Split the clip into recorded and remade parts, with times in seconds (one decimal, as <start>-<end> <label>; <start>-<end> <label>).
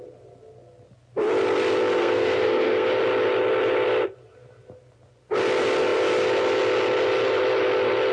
0.0-2.0 recorded; 2.0-2.9 remade; 2.9-8.1 recorded